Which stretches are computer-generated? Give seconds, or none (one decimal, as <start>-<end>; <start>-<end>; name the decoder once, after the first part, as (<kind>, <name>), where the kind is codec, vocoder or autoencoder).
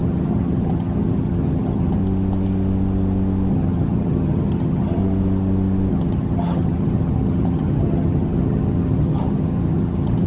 0.0-2.0 (vocoder, HiFi-GAN); 3.5-5.0; 5.9-10.3